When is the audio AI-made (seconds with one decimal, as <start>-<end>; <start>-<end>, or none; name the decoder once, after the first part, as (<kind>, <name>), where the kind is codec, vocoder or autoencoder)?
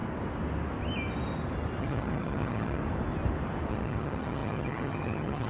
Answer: 1.8-2.8 (vocoder, HiFi-GAN); 3.7-5.5